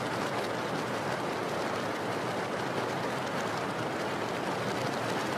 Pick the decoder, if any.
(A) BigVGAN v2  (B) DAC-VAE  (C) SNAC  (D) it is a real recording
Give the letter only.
D